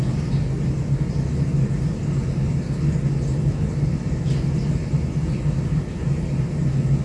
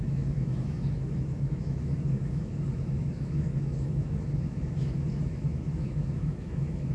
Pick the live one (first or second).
first